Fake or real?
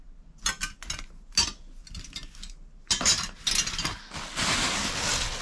real